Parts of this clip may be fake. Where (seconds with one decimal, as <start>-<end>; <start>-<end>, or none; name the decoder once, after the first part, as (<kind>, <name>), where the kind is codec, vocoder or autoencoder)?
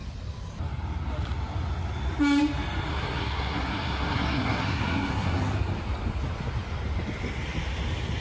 2.9-5.4 (codec, SNAC)